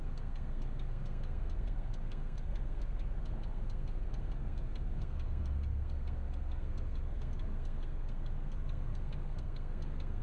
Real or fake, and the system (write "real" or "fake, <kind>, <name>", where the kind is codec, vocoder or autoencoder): fake, codec, SNAC